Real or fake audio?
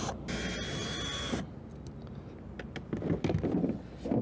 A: real